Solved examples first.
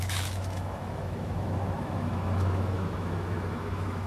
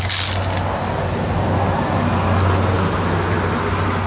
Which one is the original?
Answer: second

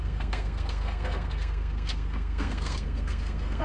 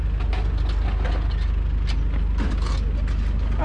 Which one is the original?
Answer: second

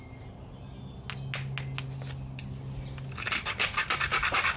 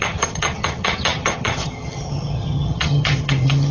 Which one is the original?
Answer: first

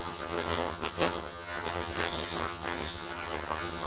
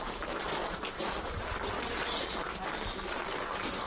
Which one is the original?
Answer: second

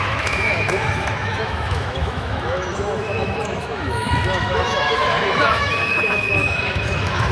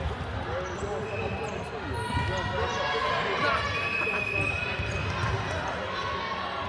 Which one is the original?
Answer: second